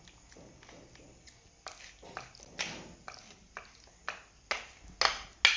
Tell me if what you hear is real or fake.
real